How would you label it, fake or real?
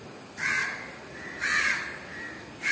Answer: real